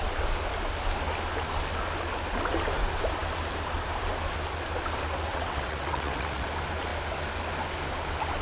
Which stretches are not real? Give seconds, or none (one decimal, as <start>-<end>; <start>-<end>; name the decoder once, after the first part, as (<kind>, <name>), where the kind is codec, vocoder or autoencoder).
5.3-6.5 (vocoder, WaveNeXt)